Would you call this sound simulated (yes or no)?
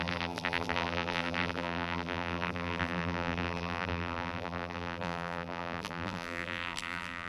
yes